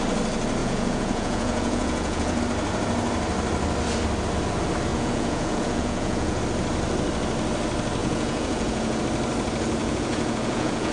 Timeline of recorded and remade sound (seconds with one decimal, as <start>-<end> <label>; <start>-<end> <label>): 0.0-0.6 recorded; 0.6-2.4 remade; 2.4-4.9 recorded; 4.9-6.4 remade; 6.4-8.0 recorded; 8.0-9.0 remade; 9.0-9.8 recorded; 9.8-10.9 remade